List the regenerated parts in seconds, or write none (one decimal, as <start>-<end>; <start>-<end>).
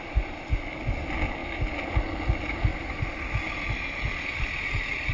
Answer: none